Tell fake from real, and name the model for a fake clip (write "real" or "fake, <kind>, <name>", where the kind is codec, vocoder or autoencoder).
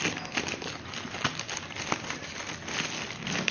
real